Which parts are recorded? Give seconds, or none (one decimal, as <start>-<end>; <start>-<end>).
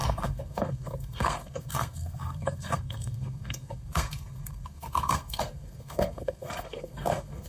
none